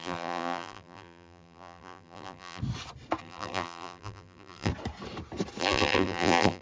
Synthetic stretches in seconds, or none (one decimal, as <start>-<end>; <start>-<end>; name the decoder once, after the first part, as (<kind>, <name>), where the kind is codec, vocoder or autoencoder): 0.0-2.6 (vocoder, BigVGAN v2); 3.2-4.7; 5.6-6.6